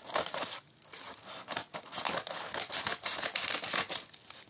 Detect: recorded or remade recorded